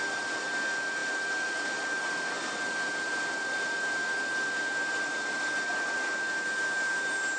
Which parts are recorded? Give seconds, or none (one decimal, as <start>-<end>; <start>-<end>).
0.0-7.4